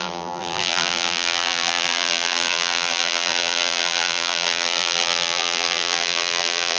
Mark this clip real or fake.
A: fake